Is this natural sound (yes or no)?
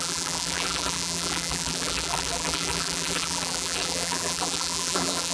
no